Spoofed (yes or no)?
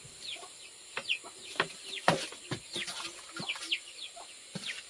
no